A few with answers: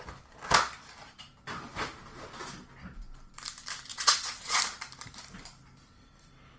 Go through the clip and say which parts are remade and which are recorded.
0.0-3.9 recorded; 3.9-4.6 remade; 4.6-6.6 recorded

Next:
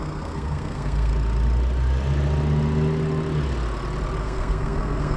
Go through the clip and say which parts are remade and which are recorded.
0.0-1.1 remade; 1.1-4.2 recorded; 4.2-5.2 remade

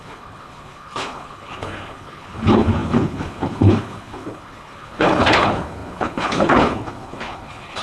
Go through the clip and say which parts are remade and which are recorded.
0.0-7.8 remade